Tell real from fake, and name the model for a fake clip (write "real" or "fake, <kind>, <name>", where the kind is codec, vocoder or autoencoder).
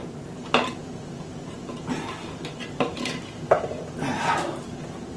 real